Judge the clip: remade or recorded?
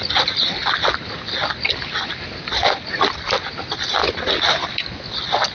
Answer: recorded